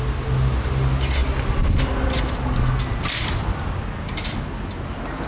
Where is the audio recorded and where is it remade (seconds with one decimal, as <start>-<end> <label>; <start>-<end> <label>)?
0.0-5.3 recorded